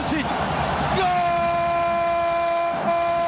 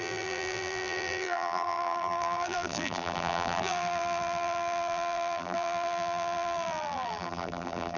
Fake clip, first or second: second